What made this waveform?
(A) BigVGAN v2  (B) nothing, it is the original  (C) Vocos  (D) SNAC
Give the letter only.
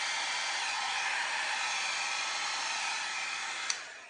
B